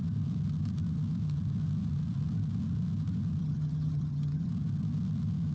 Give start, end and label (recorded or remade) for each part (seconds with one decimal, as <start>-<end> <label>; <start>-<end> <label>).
0.0-3.4 recorded; 3.4-4.5 remade; 4.5-5.5 recorded